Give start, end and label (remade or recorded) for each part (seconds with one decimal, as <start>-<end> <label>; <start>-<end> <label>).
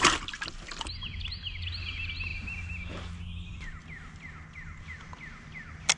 0.0-6.0 recorded